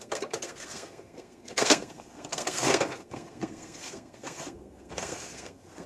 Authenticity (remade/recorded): remade